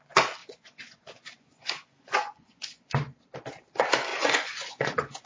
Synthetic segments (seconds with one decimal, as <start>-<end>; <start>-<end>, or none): 0.4-2.8; 4.1-5.3